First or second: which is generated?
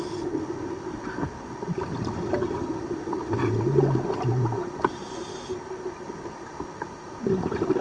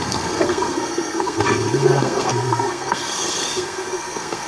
second